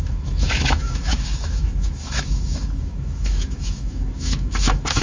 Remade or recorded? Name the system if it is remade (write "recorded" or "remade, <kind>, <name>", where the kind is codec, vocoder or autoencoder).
remade, autoencoder, DAC-VAE